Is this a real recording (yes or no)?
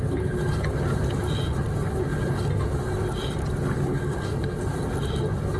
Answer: yes